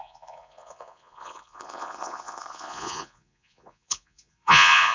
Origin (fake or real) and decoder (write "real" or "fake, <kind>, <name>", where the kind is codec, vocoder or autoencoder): fake, vocoder, Vocos